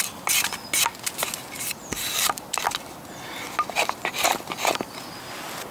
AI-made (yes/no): no